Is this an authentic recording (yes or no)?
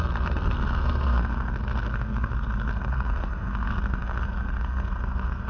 no